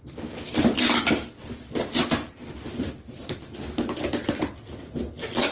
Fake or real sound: real